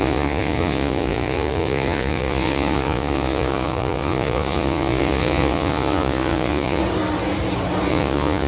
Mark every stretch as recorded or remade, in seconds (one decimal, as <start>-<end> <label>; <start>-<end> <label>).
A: 0.0-6.8 remade; 6.8-7.9 recorded; 7.9-8.5 remade